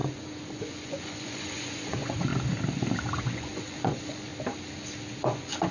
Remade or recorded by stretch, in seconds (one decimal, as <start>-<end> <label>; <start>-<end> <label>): 0.0-2.3 remade; 2.3-3.2 recorded; 3.2-4.3 remade; 4.3-5.2 recorded; 5.2-5.7 remade